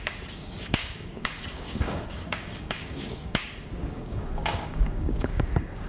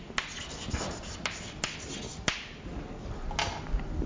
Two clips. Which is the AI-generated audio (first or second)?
first